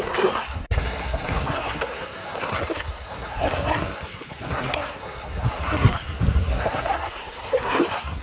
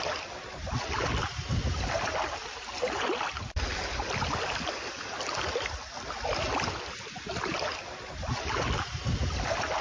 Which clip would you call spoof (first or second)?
first